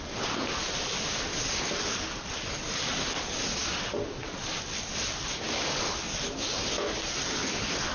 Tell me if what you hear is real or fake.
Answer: real